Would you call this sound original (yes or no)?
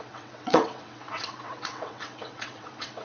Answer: no